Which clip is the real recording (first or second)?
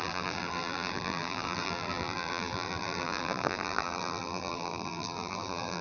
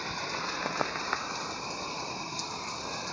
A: second